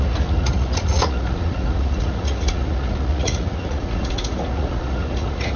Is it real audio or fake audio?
fake